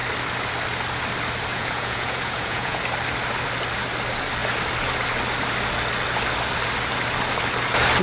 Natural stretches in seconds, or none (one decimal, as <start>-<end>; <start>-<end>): 0.0-1.5; 2.8-8.0